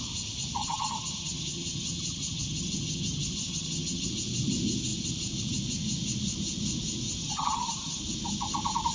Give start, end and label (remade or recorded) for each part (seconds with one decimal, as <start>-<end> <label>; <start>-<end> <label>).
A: 0.0-0.6 recorded; 0.6-4.1 remade; 4.1-7.2 recorded; 7.2-8.0 remade; 8.0-8.9 recorded

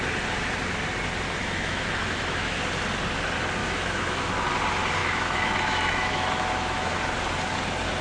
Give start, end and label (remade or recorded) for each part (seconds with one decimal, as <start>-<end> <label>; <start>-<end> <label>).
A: 0.0-1.4 recorded; 1.4-2.6 remade; 2.6-3.6 recorded; 3.6-4.3 remade; 4.3-5.0 recorded; 5.0-6.9 remade; 6.9-8.0 recorded

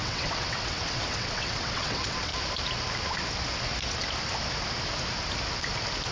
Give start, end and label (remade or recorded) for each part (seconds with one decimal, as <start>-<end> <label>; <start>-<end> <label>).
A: 0.0-2.3 remade; 2.3-6.1 recorded

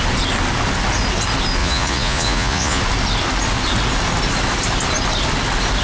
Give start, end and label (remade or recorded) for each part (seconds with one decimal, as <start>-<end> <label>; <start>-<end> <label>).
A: 0.0-1.6 recorded; 1.6-2.8 remade; 2.8-5.8 recorded

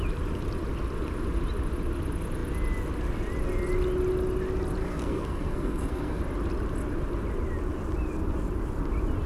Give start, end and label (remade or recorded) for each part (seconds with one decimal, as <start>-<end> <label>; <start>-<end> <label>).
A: 0.0-4.8 recorded; 4.8-6.2 remade; 6.2-9.3 recorded

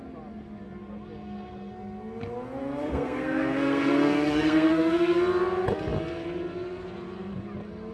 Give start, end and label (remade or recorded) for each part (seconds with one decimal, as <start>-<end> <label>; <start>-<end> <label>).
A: 0.0-2.6 recorded; 2.6-5.2 remade; 5.2-7.9 recorded

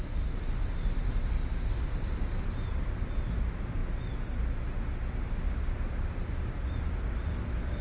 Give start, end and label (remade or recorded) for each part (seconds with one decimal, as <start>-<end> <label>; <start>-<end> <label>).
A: 0.0-1.7 recorded; 1.7-3.0 remade; 3.0-7.8 recorded